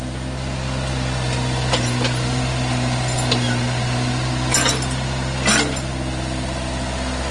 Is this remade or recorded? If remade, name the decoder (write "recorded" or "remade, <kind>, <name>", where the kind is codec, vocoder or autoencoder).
recorded